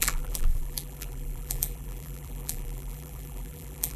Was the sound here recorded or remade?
remade